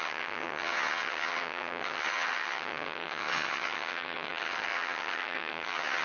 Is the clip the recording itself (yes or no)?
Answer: no